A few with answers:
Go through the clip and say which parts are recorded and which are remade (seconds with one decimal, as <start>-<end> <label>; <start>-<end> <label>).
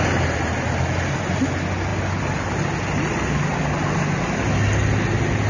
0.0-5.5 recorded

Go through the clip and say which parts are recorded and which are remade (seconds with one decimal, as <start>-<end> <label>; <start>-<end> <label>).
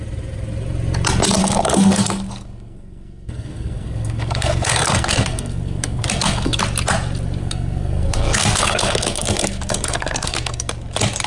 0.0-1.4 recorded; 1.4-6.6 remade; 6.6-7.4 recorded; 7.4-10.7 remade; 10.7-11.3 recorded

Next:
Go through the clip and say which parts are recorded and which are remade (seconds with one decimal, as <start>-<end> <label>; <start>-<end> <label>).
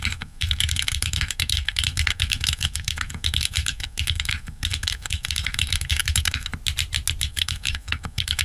0.0-6.5 remade; 6.5-7.2 recorded; 7.2-8.4 remade